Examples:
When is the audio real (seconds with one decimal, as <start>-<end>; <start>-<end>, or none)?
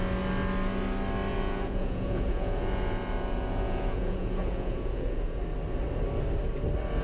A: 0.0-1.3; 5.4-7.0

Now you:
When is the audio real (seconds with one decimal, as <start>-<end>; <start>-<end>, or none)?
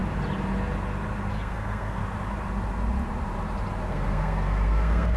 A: 0.0-1.3; 2.0-3.9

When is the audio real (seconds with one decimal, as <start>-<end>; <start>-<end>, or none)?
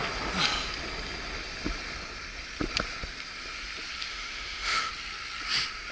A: 0.0-4.1; 4.9-5.9